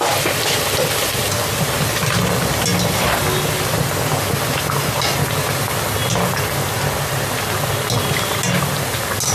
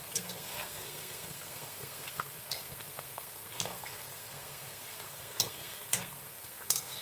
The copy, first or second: second